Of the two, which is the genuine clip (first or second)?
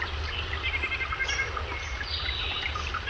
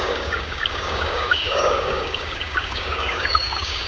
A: first